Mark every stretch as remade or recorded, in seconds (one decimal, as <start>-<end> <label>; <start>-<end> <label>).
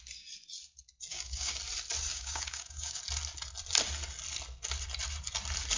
0.0-1.1 recorded; 1.1-1.6 remade; 1.6-2.1 recorded; 2.1-3.0 remade; 3.0-5.8 recorded